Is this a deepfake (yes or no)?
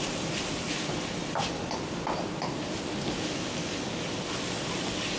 no